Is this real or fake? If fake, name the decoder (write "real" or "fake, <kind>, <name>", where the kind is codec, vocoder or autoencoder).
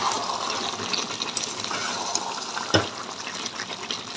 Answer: real